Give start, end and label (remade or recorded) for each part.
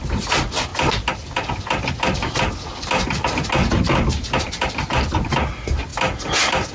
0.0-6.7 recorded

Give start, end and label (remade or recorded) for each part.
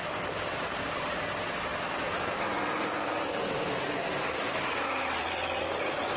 0.0-6.2 recorded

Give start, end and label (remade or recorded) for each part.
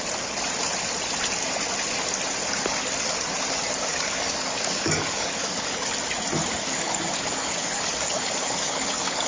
0.0-3.9 recorded; 3.9-5.9 remade; 5.9-6.4 recorded; 6.4-9.3 remade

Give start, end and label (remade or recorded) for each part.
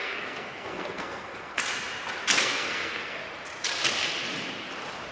0.0-1.6 remade; 1.6-2.2 recorded; 2.2-3.2 remade; 3.2-5.1 recorded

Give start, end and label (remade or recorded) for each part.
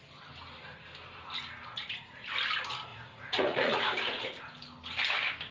0.0-1.7 recorded; 1.7-2.3 remade; 2.3-2.9 recorded; 2.9-4.4 remade; 4.4-5.5 recorded